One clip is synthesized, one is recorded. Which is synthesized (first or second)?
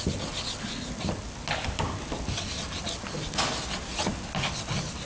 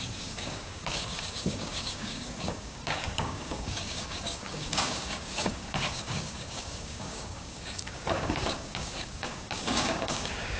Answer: second